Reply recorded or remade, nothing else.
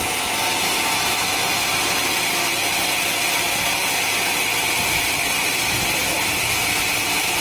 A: recorded